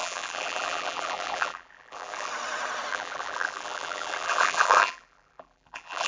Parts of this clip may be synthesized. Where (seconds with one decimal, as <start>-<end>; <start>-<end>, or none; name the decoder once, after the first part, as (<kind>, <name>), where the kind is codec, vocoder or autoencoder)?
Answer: 0.0-2.3 (vocoder, BigVGAN v2); 2.9-6.1